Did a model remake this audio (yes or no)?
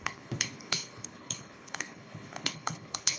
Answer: yes